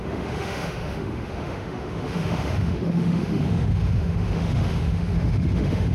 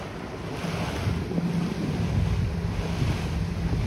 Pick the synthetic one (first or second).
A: first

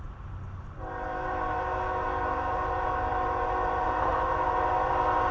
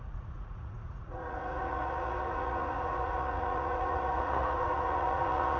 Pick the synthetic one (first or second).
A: second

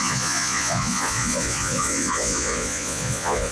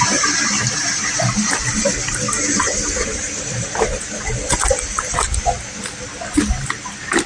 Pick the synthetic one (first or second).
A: first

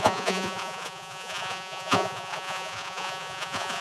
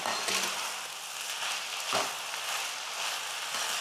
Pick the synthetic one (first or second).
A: first